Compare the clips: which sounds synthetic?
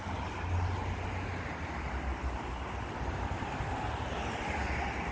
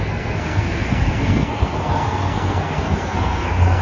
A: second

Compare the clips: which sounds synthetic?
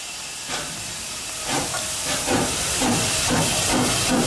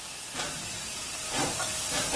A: first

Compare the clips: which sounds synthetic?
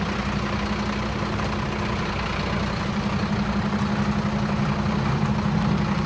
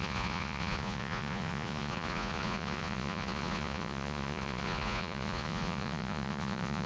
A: second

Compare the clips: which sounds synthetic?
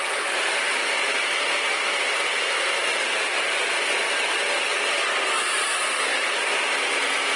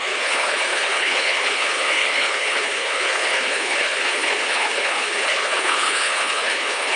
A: second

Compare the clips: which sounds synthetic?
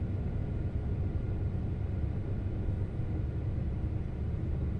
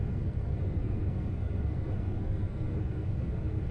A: second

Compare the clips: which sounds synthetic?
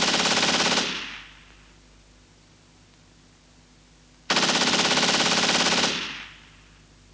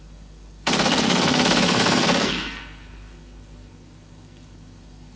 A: second